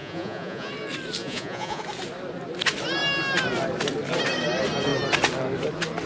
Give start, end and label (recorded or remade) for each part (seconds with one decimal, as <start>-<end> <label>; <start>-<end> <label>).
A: 0.0-0.7 remade; 0.7-1.2 recorded; 1.2-1.8 remade; 1.8-6.1 recorded